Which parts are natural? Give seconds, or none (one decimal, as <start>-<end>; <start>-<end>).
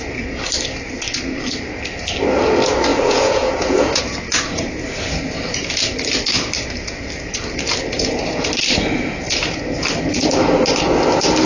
0.0-2.9; 4.0-11.5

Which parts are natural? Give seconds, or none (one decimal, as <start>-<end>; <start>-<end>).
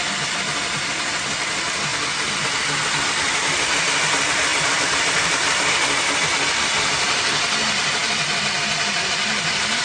0.0-1.9; 2.6-4.5; 5.7-9.8